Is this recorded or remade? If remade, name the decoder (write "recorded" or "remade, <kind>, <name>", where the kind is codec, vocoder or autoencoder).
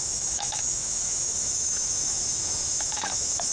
remade, autoencoder, DAC-VAE